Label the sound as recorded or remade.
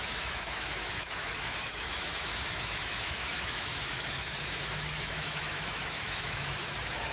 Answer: remade